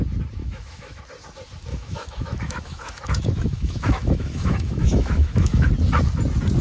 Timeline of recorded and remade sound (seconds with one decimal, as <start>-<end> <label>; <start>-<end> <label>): 0.0-0.4 recorded; 0.4-1.0 remade; 1.0-1.7 recorded; 1.7-5.7 remade; 5.7-6.6 recorded